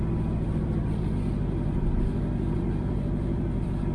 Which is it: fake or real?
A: fake